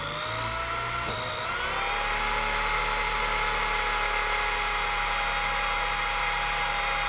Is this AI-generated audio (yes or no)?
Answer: no